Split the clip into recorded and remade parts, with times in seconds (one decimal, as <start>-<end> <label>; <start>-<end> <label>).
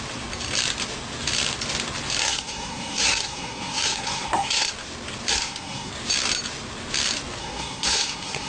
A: 0.0-2.2 recorded; 2.2-4.7 remade; 4.7-5.3 recorded; 5.3-5.9 remade; 5.9-7.4 recorded; 7.4-8.5 remade